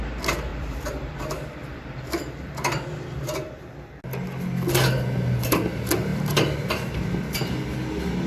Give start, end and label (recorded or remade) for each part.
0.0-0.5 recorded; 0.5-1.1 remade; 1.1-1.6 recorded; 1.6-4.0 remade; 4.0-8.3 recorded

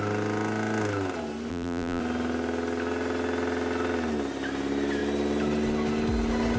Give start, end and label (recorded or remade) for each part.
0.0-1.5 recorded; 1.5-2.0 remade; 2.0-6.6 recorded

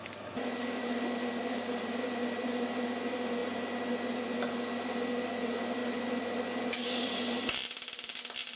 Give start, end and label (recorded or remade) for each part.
0.0-3.4 remade; 3.4-4.1 recorded; 4.1-8.6 remade